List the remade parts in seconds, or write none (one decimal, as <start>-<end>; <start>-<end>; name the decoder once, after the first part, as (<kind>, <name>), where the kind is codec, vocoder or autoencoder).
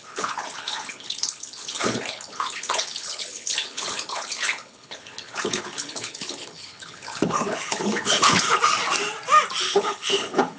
0.0-8.6 (codec, HILCodec); 9.6-10.6